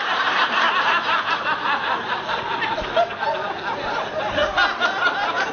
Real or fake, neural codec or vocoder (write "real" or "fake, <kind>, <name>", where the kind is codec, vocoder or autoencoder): real